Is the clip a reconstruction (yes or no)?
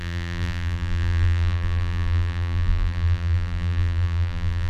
yes